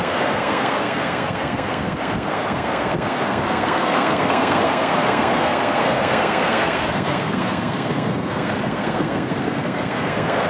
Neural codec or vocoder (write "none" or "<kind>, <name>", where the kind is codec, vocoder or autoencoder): codec, SNAC